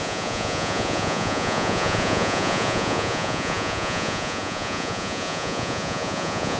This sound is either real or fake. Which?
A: fake